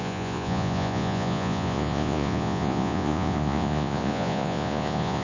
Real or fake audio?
fake